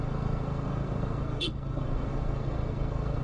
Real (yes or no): no